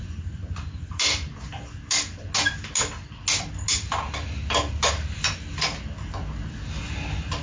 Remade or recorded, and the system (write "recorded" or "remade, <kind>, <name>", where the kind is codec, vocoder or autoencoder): recorded